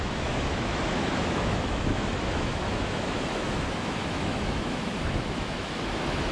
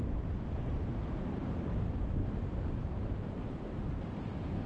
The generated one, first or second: first